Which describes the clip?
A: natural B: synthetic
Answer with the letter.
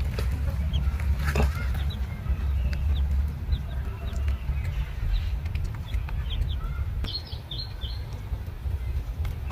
A